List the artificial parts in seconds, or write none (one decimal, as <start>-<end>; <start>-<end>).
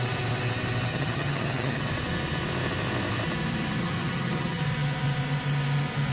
0.9-1.8; 3.8-4.6